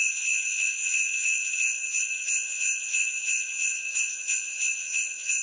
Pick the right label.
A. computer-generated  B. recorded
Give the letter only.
A